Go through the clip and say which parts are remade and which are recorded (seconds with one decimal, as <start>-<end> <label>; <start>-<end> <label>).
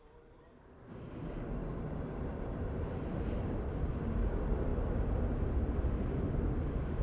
0.0-1.6 recorded; 1.6-3.8 remade; 3.8-7.0 recorded